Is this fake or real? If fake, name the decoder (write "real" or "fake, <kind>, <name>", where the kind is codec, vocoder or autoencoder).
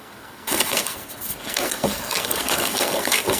fake, codec, SNAC